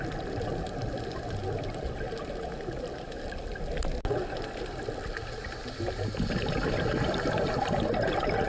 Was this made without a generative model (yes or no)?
yes